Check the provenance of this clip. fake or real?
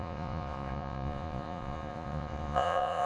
fake